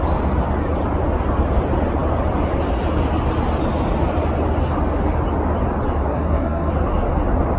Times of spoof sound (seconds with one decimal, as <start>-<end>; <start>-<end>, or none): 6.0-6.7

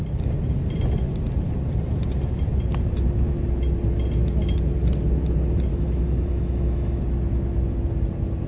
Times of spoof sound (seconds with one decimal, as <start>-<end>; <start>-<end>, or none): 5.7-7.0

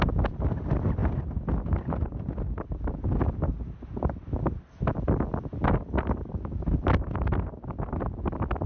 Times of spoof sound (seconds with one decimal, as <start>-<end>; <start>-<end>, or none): none

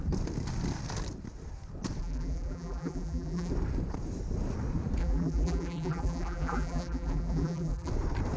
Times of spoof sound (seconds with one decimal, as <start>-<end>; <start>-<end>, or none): 2.0-3.5; 5.0-7.9

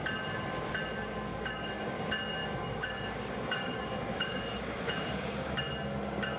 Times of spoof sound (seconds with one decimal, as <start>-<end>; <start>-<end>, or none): 1.3-2.0; 2.4-5.6

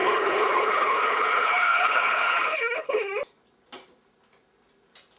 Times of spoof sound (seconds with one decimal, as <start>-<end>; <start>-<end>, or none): 0.0-3.1